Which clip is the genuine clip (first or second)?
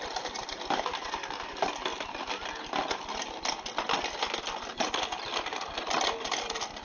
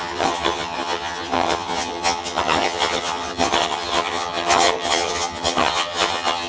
first